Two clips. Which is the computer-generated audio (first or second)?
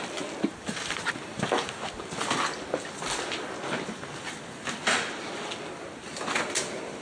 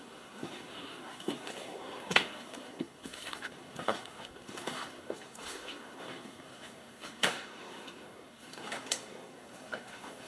second